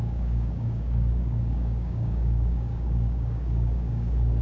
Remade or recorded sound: remade